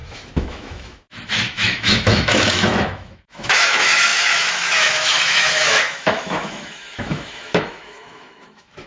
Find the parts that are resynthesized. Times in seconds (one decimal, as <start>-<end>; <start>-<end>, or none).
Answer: 0.0-8.9